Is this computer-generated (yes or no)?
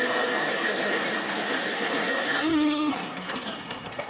yes